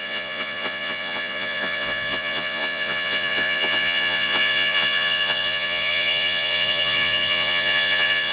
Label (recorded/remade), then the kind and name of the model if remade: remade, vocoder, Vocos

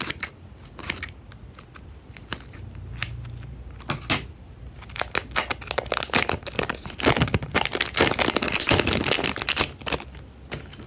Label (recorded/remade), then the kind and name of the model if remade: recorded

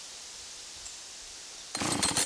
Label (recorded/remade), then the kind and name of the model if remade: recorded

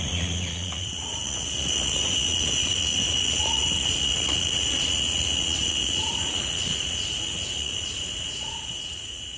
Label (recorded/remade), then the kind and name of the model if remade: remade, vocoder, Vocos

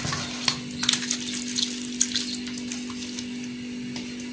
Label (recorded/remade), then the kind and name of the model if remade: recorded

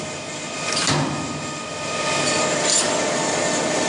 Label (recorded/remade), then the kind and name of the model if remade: recorded